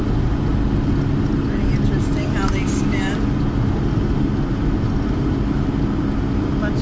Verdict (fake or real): real